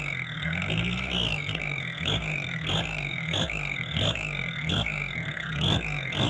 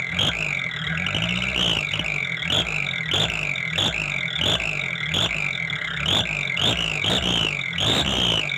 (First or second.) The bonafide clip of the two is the second